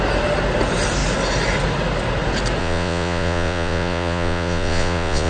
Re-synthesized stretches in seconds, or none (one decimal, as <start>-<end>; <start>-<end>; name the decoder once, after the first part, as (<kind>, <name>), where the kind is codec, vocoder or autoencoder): 2.6-5.3 (vocoder, Vocos)